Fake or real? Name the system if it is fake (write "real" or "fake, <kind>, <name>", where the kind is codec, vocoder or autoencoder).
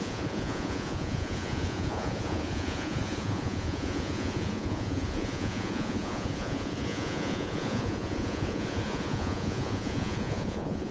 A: fake, vocoder, Vocos